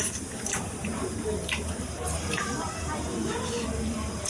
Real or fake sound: fake